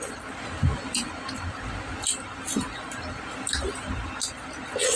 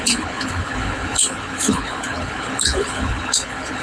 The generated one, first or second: second